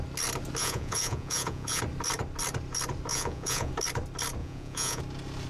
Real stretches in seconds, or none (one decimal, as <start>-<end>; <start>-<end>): 0.0-0.6; 1.8-3.1; 3.7-4.4; 5.0-5.5